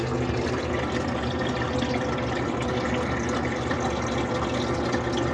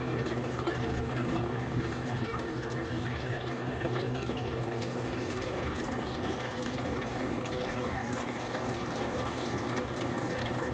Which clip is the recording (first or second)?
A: first